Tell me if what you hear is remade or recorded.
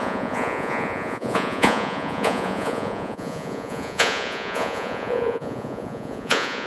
remade